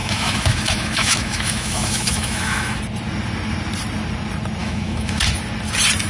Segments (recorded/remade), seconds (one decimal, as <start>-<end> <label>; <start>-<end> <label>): 0.0-2.8 remade; 2.8-4.6 recorded; 4.6-5.2 remade; 5.2-6.1 recorded